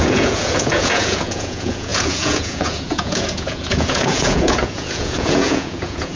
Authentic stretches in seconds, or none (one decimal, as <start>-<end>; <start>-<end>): none